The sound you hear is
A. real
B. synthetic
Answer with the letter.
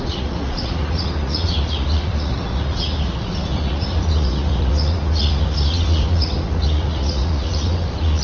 B